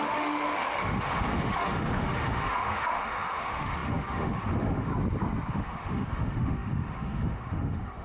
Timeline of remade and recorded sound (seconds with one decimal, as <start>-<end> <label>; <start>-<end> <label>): 0.0-4.9 remade; 4.9-5.5 recorded; 5.5-8.0 remade